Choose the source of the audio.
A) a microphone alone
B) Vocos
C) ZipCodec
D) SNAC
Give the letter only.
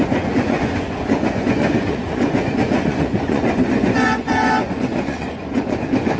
B